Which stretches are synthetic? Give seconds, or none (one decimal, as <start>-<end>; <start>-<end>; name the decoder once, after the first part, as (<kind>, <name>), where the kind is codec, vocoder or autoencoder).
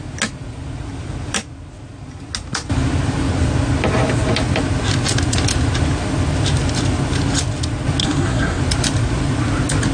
8.0-8.6 (codec, SNAC)